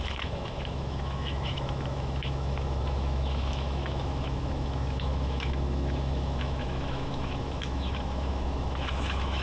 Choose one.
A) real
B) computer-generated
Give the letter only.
B